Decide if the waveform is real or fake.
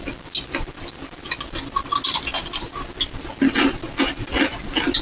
real